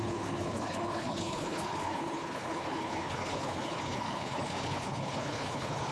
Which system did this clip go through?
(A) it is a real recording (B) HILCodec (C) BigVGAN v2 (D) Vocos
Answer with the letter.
B